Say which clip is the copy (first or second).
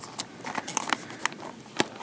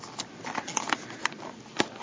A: first